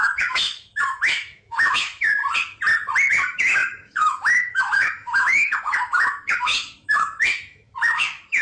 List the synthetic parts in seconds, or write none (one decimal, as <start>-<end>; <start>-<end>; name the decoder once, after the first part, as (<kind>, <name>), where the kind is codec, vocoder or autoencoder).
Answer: 0.0-2.2 (autoencoder, DAC-VAE); 3.1-8.4